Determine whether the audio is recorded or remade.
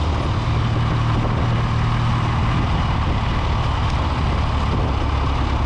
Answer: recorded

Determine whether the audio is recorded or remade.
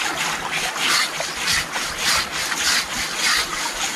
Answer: recorded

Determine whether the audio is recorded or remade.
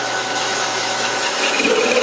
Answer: remade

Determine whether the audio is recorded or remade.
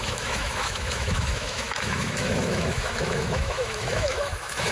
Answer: remade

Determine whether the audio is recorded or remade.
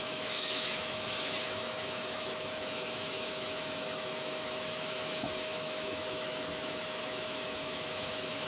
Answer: remade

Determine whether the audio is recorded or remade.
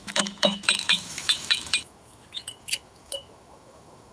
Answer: remade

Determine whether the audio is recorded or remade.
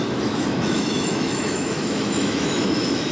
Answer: remade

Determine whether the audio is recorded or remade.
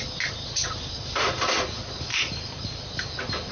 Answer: recorded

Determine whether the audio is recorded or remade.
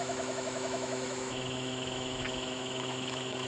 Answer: remade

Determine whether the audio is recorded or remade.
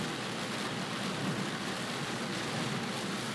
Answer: recorded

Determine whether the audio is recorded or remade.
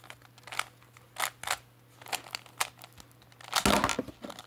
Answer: recorded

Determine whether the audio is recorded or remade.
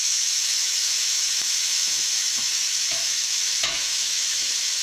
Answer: remade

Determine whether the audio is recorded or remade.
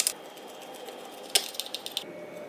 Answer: recorded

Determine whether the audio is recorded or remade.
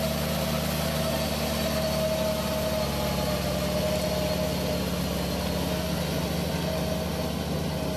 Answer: recorded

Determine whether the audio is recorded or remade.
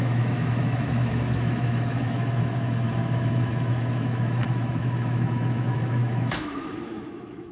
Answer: remade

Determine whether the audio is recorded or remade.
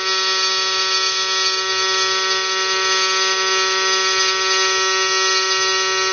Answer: recorded